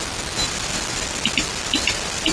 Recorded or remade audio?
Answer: recorded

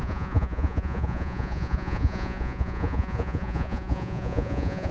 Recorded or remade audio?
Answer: remade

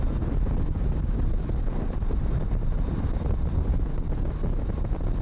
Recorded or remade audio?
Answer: recorded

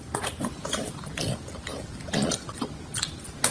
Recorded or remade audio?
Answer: recorded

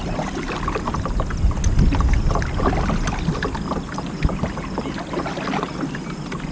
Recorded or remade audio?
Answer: recorded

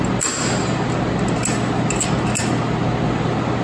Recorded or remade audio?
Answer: recorded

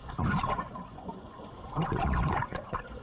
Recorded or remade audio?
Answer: remade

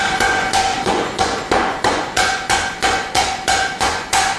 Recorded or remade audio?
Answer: remade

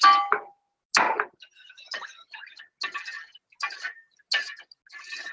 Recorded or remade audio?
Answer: recorded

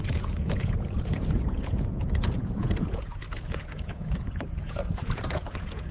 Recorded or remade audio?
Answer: remade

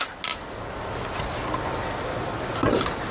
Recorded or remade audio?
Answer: recorded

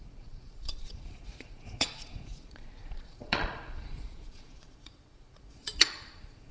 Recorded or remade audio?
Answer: remade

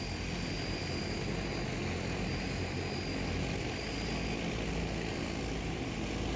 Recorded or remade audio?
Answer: recorded